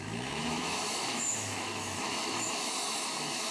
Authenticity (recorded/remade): remade